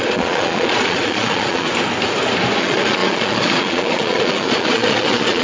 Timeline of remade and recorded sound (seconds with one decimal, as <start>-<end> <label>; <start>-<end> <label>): 0.0-1.7 remade; 1.7-2.6 recorded; 2.6-5.4 remade